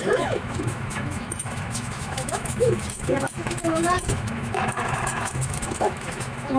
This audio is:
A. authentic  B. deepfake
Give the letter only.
B